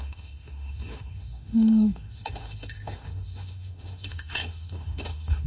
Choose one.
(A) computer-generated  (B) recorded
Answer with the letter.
A